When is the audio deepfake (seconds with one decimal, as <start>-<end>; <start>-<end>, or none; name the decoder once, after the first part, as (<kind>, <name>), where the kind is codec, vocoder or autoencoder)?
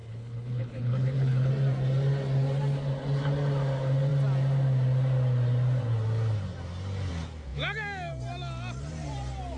0.0-1.5 (codec, HILCodec)